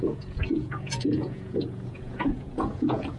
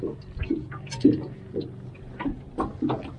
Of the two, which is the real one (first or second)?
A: second